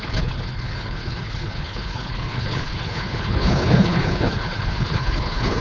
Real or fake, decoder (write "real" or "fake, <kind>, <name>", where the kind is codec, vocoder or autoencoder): fake, codec, HILCodec